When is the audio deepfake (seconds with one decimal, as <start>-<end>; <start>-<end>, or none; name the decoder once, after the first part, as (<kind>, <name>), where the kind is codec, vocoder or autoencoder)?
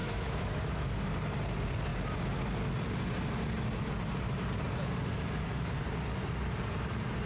0.0-0.9 (autoencoder, DAC-VAE)